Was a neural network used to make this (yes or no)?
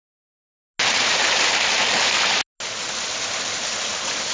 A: no